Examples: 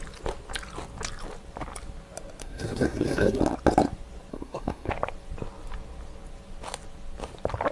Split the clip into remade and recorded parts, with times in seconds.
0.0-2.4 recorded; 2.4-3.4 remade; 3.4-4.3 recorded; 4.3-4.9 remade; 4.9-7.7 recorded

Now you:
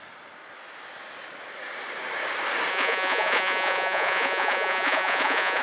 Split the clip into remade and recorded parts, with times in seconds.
0.0-2.7 recorded; 2.7-5.6 remade

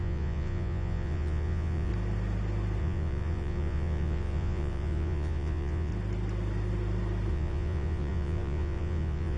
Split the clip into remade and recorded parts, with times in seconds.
0.0-1.9 remade; 1.9-2.8 recorded; 2.8-5.9 remade; 5.9-7.3 recorded; 7.3-9.4 remade

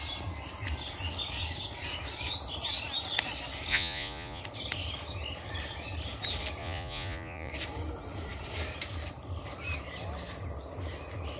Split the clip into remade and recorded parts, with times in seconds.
0.0-3.7 recorded; 3.7-4.4 remade; 4.4-6.6 recorded; 6.6-7.5 remade; 7.5-11.4 recorded